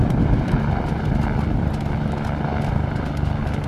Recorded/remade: recorded